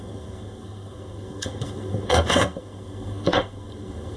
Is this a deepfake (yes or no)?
yes